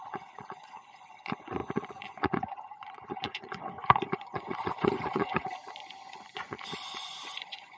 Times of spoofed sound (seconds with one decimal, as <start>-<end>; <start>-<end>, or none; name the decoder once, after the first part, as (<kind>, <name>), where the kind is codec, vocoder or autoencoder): 0.0-7.8 (vocoder, Vocos)